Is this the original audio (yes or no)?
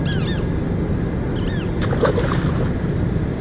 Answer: yes